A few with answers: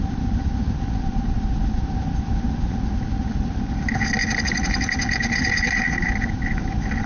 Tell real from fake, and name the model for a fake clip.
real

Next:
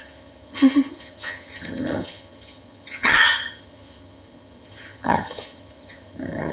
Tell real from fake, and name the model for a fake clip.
fake, vocoder, HiFi-GAN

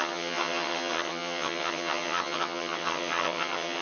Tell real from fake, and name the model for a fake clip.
fake, vocoder, HiFi-GAN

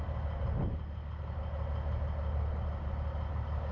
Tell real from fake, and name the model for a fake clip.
real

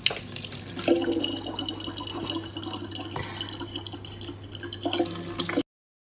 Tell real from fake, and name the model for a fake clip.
real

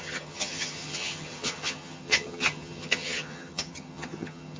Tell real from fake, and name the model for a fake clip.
fake, vocoder, HiFi-GAN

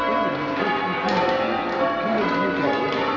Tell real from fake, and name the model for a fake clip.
real